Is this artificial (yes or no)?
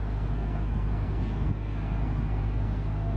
yes